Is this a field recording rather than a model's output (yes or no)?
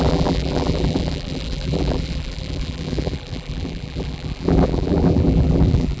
no